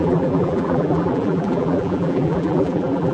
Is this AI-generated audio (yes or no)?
yes